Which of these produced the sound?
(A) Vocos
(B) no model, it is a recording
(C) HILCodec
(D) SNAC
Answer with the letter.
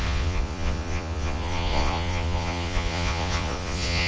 A